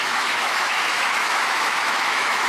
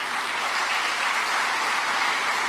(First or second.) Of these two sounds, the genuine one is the second